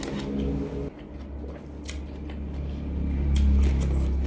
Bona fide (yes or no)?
yes